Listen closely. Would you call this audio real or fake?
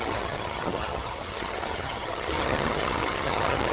fake